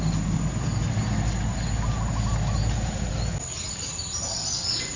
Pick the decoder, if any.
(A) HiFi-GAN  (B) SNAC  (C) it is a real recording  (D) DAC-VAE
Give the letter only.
C